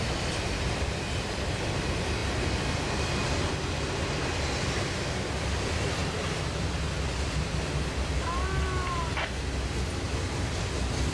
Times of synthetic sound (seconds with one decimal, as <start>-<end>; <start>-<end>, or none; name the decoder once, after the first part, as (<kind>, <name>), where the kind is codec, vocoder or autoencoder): none